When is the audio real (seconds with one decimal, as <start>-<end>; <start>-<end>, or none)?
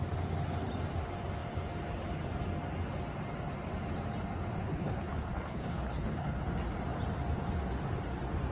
0.0-4.6; 6.4-8.5